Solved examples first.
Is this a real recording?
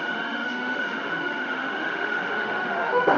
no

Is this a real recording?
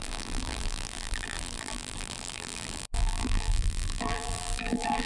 no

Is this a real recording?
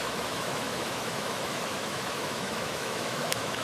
no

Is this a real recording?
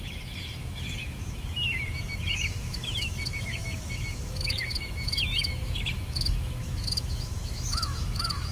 no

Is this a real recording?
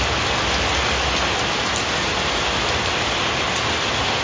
yes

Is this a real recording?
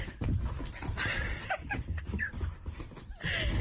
no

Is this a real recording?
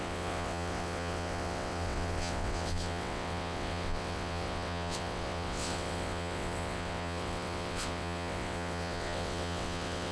no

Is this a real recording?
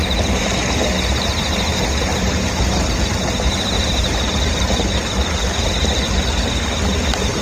yes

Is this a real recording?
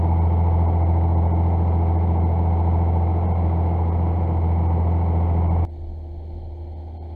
yes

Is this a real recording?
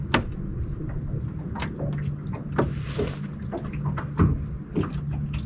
yes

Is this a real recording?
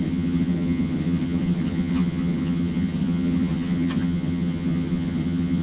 no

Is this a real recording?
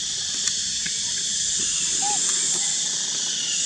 yes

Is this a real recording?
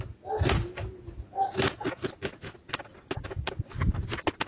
yes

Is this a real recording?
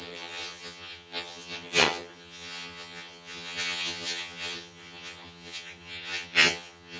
no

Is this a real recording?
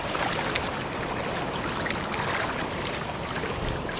yes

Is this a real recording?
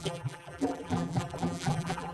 no